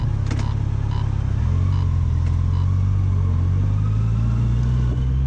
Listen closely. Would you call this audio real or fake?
real